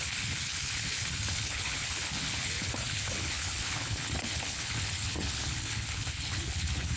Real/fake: fake